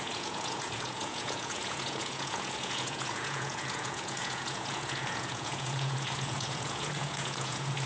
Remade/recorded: remade